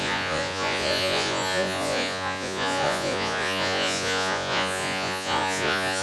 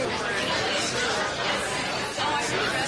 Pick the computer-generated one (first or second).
first